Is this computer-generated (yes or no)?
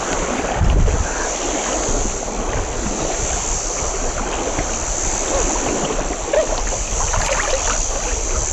no